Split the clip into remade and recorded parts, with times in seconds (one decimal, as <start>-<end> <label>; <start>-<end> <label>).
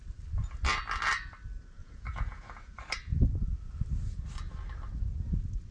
0.0-1.8 recorded; 1.8-2.8 remade; 2.8-5.7 recorded